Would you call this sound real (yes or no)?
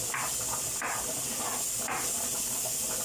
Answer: yes